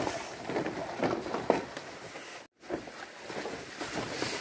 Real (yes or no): yes